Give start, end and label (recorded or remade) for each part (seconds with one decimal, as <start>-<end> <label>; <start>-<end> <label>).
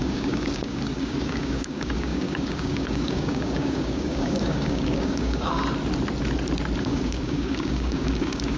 0.0-5.6 remade; 5.6-6.8 recorded; 6.8-8.6 remade